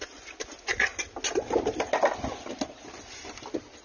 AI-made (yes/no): no